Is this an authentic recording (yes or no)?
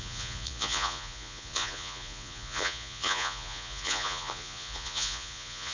no